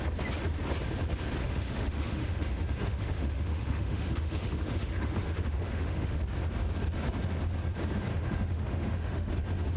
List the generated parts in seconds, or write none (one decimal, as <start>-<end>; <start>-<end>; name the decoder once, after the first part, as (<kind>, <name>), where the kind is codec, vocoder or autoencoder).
1.4-6.2 (autoencoder, DAC-VAE); 8.1-9.3